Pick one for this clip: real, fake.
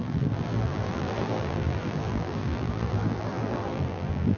fake